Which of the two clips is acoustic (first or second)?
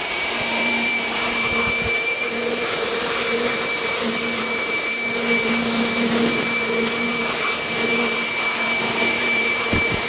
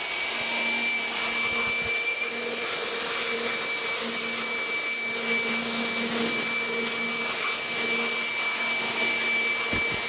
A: second